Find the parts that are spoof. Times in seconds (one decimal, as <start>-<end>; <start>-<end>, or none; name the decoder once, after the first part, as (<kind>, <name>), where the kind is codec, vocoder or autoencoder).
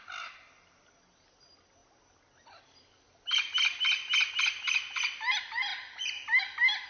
none